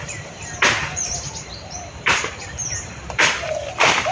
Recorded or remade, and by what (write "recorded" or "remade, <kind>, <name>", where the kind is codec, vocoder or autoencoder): remade, vocoder, BigVGAN v2